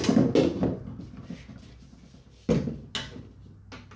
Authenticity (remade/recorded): recorded